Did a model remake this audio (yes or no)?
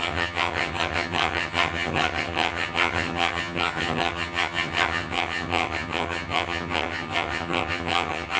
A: yes